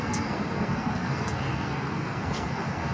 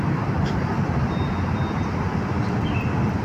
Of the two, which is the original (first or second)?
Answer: second